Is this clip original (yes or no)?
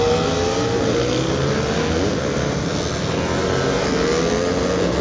yes